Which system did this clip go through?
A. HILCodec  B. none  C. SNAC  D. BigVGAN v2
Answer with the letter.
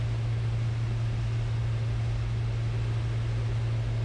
B